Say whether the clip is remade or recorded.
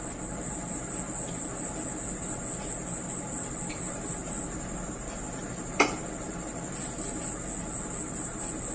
recorded